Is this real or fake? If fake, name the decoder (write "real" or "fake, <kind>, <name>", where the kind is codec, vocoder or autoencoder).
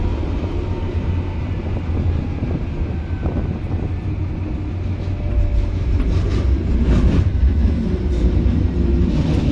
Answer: real